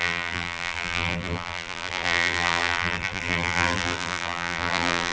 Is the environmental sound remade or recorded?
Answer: remade